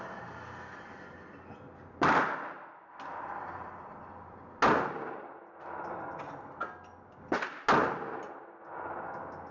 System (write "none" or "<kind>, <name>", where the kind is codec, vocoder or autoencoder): none